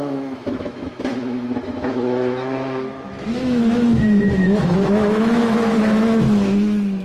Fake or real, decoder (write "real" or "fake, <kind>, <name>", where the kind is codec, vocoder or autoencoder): fake, autoencoder, DAC-VAE